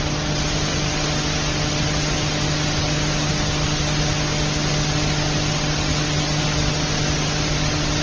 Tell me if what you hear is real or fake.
real